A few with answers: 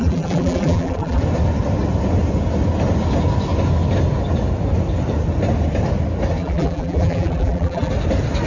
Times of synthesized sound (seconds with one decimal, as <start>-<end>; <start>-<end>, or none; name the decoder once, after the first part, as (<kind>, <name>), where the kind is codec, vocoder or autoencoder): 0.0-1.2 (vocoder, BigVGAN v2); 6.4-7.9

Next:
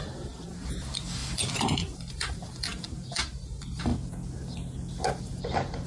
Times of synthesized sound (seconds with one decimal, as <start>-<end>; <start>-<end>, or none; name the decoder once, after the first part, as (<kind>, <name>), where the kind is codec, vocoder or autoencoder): 0.0-3.9 (vocoder, BigVGAN v2); 5.2-5.9

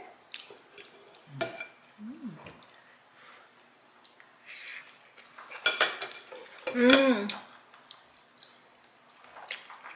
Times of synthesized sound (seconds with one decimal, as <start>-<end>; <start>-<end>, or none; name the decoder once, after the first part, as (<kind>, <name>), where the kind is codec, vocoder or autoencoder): 6.4-7.0 (vocoder, BigVGAN v2)

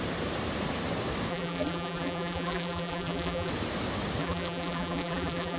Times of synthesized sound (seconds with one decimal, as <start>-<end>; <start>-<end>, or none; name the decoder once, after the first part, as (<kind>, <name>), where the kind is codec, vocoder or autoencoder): 1.3-3.5 (vocoder, BigVGAN v2); 4.2-5.6

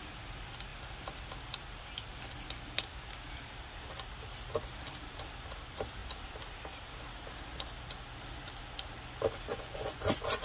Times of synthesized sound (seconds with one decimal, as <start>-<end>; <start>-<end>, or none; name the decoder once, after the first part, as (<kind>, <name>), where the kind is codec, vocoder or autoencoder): 9.5-10.4 (vocoder, Vocos)